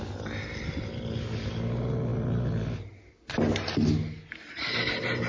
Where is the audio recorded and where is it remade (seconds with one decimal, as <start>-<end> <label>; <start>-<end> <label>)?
0.0-5.3 recorded